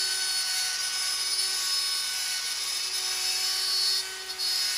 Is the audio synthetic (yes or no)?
no